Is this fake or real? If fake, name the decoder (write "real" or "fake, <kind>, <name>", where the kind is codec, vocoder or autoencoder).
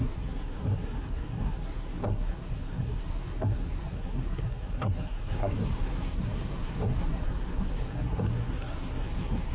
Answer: fake, codec, SNAC